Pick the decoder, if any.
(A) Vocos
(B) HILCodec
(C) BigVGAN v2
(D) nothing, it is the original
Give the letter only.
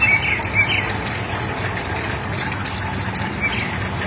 D